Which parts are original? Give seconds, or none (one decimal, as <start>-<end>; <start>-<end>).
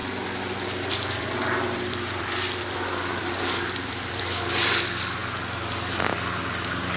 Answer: 4.2-7.0